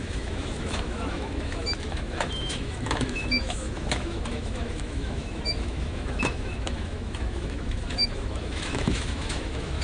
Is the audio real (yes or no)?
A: no